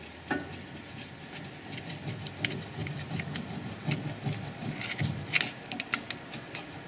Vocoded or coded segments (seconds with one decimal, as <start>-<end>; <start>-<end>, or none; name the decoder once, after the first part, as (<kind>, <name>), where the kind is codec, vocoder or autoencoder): none